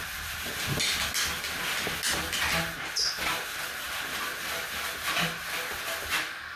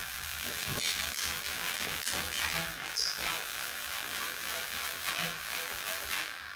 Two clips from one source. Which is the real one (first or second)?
first